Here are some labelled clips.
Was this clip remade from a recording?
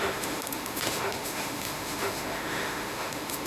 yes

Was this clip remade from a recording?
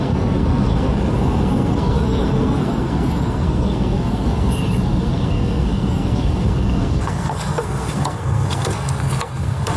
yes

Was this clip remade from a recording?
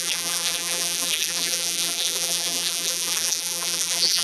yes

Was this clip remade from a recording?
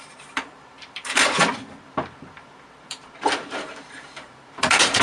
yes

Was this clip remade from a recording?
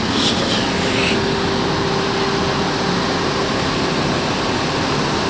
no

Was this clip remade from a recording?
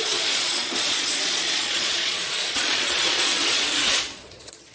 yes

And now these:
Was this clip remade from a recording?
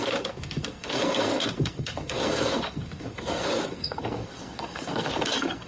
yes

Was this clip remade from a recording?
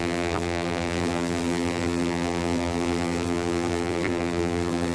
yes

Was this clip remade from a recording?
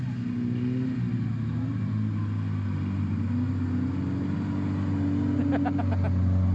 no